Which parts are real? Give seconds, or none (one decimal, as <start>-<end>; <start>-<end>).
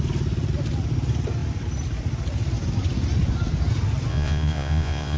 0.0-4.1